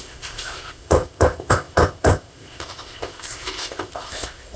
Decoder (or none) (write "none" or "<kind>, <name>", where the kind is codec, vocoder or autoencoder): codec, ZipCodec